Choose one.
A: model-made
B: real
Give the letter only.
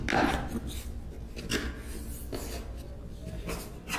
B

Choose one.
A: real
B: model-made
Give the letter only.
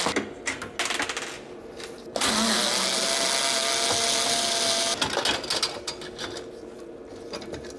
A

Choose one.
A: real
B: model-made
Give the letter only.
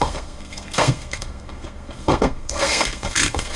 B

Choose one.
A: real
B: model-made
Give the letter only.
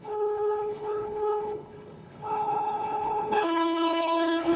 B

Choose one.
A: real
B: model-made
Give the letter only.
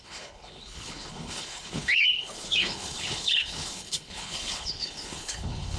B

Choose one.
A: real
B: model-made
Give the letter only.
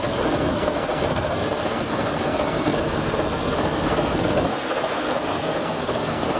B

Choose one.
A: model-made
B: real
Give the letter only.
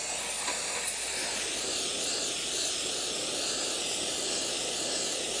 B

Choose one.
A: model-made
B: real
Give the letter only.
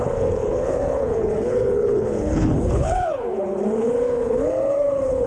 A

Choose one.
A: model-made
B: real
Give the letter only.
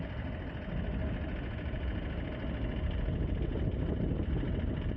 B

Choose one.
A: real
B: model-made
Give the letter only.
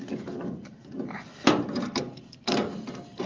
A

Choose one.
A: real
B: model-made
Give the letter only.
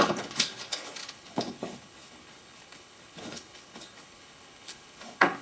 B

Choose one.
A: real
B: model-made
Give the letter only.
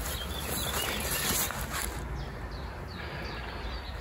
A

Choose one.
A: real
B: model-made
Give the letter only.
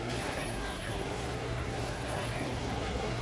B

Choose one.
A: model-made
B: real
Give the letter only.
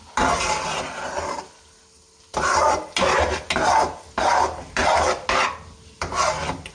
B